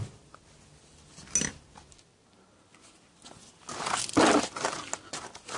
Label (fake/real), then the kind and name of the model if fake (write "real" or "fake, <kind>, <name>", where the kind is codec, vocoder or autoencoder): real